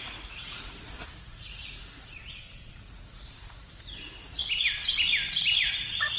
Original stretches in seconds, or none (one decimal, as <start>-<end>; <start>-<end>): 4.4-5.6